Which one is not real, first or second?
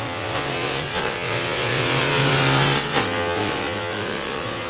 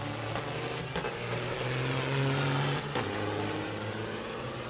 first